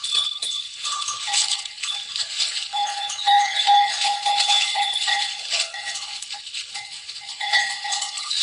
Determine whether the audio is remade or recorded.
remade